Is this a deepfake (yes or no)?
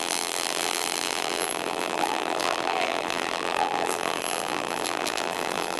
yes